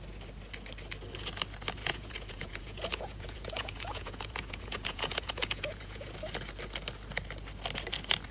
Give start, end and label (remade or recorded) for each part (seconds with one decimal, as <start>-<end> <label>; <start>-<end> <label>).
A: 0.0-1.8 recorded; 1.8-6.1 remade; 6.1-8.3 recorded